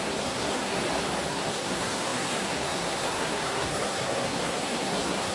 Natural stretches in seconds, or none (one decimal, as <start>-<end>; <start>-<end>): 0.8-1.3